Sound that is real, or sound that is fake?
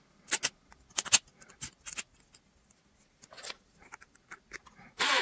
real